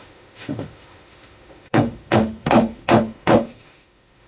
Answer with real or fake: fake